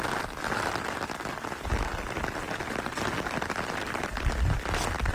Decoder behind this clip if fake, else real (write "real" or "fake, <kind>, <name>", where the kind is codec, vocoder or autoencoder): real